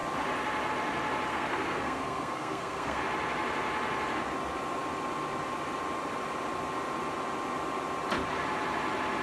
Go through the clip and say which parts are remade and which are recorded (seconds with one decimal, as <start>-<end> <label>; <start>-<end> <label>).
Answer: 0.0-1.3 recorded; 1.3-3.0 remade; 3.0-9.2 recorded